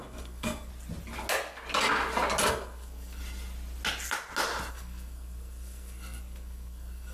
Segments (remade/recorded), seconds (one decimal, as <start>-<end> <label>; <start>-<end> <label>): 0.0-0.7 remade; 0.7-2.5 recorded; 2.5-3.2 remade; 3.2-4.7 recorded; 4.7-7.1 remade